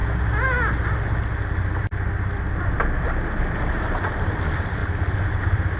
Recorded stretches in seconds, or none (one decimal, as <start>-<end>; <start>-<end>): 0.0-5.8